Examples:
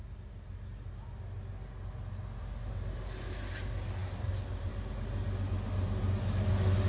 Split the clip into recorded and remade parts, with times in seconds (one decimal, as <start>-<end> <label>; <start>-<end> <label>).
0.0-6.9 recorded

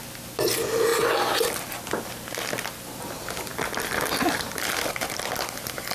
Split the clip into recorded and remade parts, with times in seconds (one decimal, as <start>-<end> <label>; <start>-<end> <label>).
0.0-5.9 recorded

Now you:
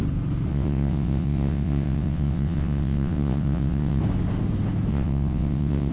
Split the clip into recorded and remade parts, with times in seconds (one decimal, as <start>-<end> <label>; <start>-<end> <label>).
0.0-0.5 recorded; 0.5-4.0 remade; 4.0-4.9 recorded; 4.9-5.9 remade